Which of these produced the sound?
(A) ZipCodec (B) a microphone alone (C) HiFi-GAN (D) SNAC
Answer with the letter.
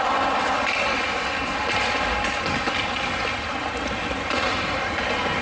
B